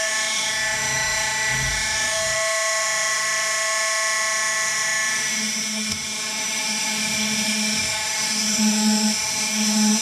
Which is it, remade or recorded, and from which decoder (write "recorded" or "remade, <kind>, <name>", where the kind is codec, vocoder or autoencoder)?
remade, autoencoder, DAC-VAE